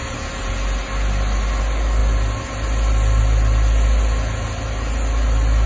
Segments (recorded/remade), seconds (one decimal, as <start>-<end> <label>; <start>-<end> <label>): 0.0-5.7 recorded